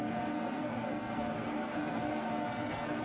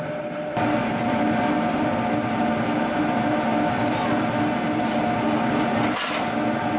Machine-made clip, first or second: first